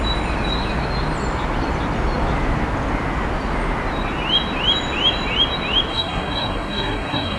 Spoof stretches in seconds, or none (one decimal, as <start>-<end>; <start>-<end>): 5.9-7.4